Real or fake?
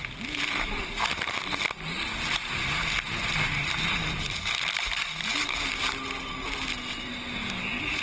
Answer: real